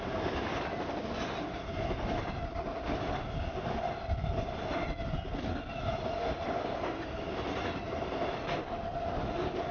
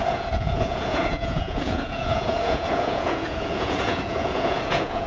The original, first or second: first